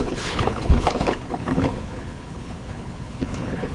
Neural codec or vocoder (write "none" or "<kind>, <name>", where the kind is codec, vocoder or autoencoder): codec, HILCodec